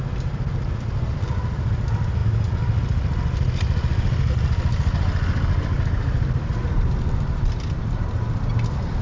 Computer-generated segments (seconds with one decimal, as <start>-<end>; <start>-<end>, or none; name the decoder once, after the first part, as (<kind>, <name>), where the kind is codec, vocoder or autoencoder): none